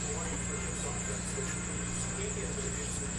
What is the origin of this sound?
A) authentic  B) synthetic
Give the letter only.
A